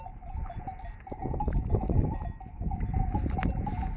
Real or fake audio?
real